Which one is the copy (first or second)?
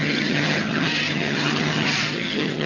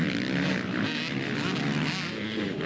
first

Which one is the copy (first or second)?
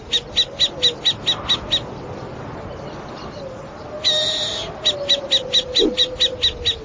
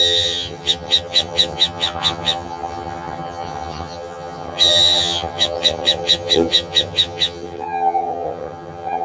second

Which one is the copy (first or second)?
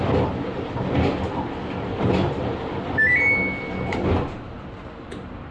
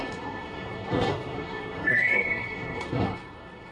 second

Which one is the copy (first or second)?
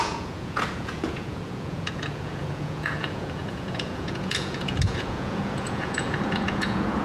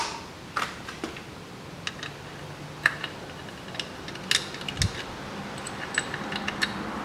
first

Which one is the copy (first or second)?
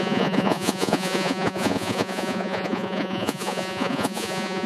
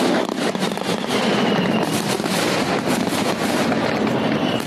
first